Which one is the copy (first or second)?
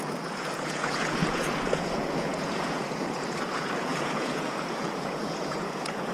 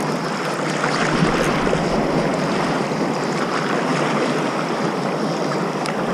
first